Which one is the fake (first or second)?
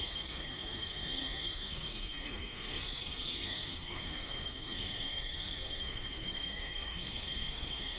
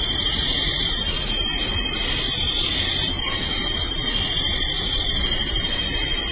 first